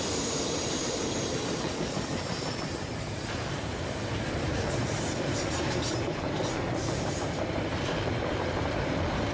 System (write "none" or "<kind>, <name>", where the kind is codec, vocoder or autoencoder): vocoder, BigVGAN v2